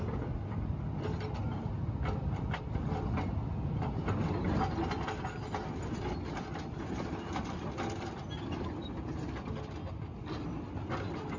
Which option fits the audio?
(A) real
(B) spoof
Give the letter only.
A